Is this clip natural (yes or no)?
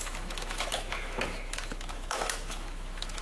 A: no